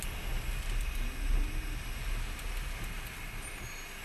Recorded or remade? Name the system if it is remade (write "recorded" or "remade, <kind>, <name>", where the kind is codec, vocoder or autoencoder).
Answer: recorded